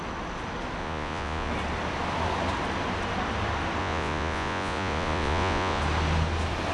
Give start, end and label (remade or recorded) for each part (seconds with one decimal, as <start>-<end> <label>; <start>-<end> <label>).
0.0-0.8 recorded; 0.8-1.5 remade; 1.5-3.8 recorded; 3.8-5.8 remade; 5.8-6.7 recorded